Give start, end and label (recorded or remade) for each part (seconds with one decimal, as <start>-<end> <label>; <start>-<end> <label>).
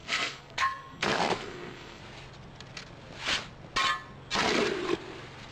0.0-2.0 remade; 2.0-5.5 recorded